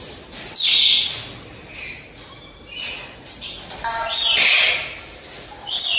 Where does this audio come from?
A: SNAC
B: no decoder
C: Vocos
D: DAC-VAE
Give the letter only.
B